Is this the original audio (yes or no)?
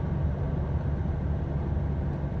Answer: yes